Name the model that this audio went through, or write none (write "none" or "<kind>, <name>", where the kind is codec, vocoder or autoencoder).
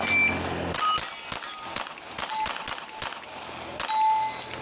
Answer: none